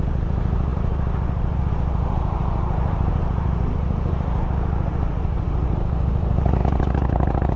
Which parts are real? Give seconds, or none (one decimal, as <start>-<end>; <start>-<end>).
6.6-7.1